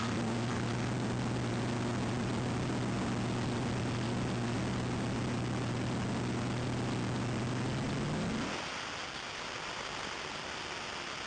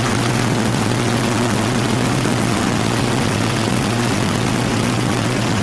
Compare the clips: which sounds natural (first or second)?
first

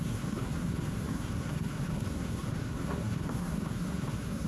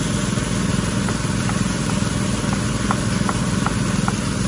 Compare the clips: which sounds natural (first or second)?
second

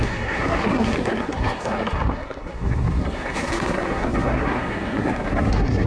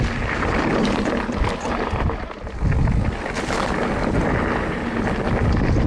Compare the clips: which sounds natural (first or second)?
second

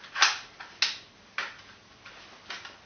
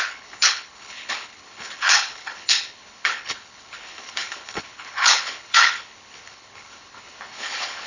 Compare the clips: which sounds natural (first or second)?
first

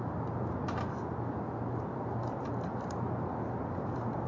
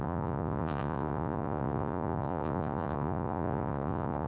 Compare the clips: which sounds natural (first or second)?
first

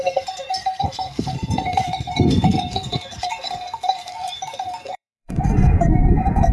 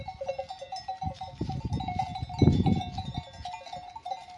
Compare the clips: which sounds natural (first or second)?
second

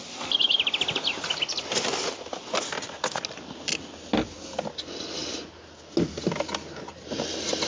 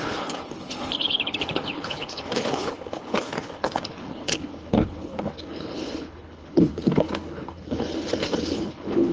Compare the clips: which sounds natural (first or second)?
first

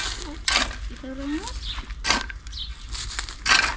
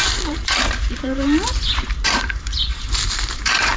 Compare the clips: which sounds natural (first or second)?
first